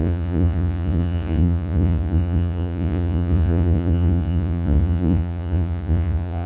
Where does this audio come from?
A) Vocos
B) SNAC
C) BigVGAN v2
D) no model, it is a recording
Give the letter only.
A